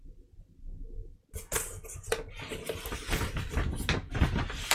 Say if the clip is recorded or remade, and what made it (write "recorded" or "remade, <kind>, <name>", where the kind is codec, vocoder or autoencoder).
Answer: recorded